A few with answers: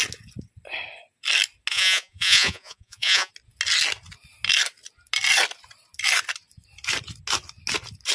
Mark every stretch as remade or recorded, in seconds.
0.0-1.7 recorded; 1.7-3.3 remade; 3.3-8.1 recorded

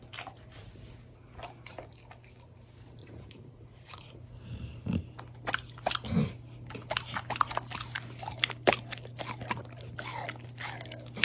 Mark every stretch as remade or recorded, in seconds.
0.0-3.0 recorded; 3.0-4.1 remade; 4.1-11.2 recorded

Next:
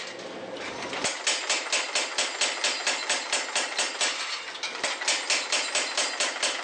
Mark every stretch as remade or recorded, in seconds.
0.0-6.6 recorded